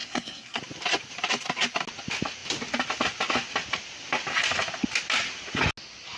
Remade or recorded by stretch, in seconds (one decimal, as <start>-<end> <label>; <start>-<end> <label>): 0.0-0.6 remade; 0.6-6.2 recorded